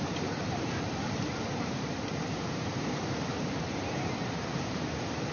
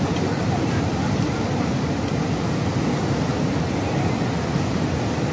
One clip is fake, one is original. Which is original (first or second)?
second